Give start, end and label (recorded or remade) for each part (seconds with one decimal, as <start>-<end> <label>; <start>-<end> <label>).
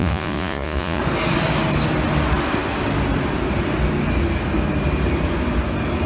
0.0-1.0 remade; 1.0-6.1 recorded